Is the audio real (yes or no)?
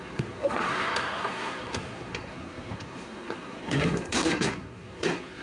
no